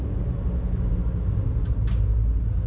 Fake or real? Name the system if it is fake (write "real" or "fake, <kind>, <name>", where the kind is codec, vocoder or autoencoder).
real